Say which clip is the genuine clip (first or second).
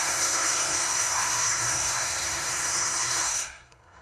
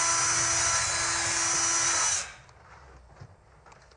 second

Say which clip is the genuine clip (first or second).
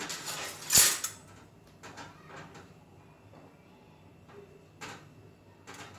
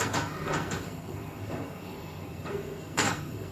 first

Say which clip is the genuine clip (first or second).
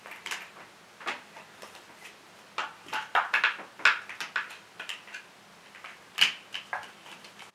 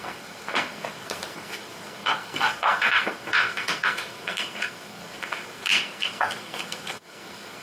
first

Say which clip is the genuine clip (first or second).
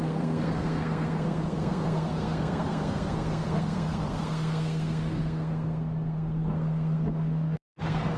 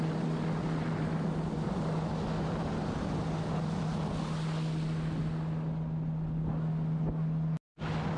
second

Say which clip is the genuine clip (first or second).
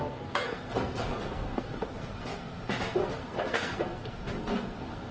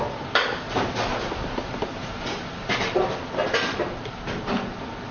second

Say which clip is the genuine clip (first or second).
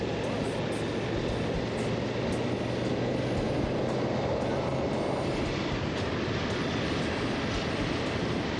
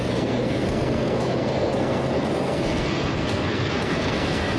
first